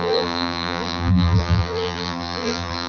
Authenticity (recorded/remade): remade